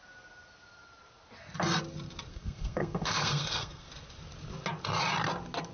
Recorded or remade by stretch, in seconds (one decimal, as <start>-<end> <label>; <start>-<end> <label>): 0.0-2.3 recorded; 2.3-3.9 remade; 3.9-5.7 recorded